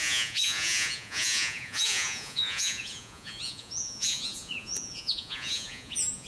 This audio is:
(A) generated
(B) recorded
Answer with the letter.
A